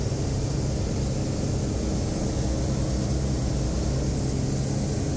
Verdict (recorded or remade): recorded